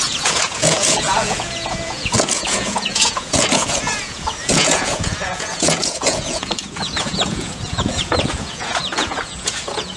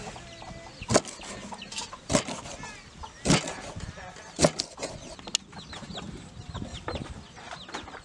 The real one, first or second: second